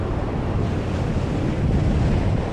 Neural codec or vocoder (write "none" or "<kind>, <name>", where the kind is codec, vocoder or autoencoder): none